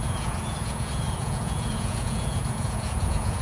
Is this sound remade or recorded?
remade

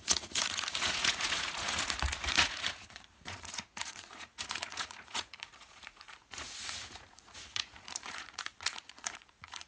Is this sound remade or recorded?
remade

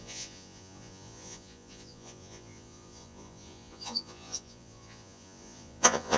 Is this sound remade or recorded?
remade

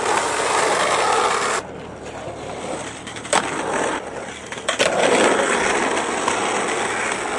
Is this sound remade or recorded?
recorded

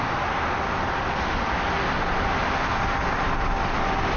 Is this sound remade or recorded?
recorded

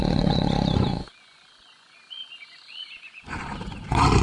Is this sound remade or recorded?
remade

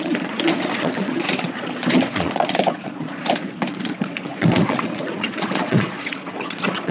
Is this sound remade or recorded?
remade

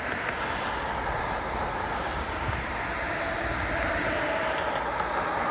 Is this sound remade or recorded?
recorded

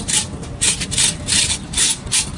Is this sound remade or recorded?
recorded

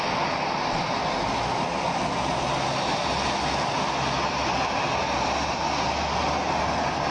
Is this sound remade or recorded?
recorded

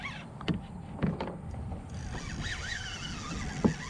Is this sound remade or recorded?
recorded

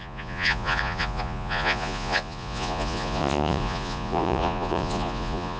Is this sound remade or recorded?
remade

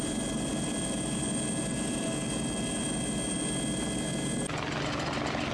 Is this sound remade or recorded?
recorded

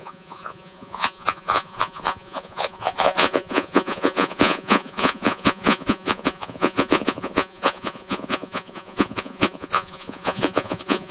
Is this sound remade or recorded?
remade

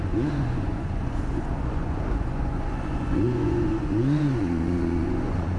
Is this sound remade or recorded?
remade